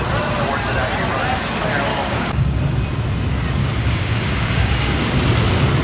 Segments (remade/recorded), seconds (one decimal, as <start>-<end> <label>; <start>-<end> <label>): 0.0-1.9 recorded; 1.9-2.6 remade; 2.6-3.6 recorded; 3.6-5.2 remade; 5.2-5.8 recorded

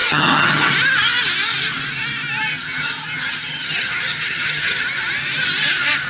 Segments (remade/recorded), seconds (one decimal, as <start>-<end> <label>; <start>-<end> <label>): 0.0-0.7 remade; 0.7-2.5 recorded; 2.5-4.8 remade; 4.8-6.1 recorded

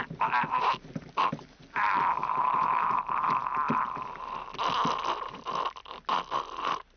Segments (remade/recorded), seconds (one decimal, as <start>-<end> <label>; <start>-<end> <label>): 0.0-2.2 recorded; 2.2-2.9 remade; 2.9-7.0 recorded

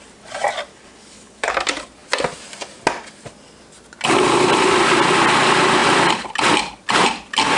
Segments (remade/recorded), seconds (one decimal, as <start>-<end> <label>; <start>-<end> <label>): 0.0-0.7 recorded; 0.7-1.5 remade; 1.5-7.6 recorded

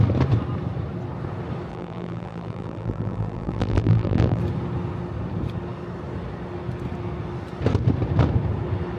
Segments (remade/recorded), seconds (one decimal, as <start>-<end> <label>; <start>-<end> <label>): 0.0-1.7 recorded; 1.7-4.4 remade; 4.4-9.0 recorded

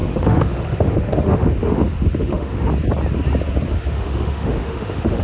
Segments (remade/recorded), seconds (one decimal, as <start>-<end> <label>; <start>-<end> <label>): 0.0-2.7 remade; 2.7-3.7 recorded; 3.7-5.2 remade

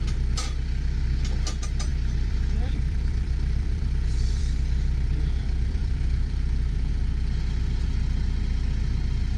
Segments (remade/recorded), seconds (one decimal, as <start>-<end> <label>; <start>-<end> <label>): 0.0-1.9 recorded; 1.9-6.9 remade; 6.9-9.4 recorded